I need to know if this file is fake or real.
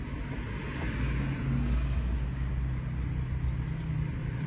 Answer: real